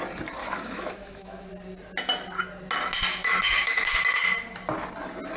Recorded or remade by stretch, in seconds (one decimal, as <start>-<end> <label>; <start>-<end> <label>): 0.0-0.4 recorded; 0.4-1.5 remade; 1.5-3.1 recorded; 3.1-4.0 remade; 4.0-5.4 recorded